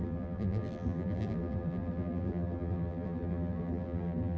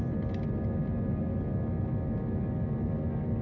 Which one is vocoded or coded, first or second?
first